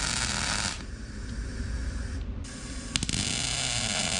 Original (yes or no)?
yes